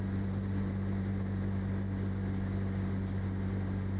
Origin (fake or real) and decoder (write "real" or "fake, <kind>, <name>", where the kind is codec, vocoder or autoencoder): real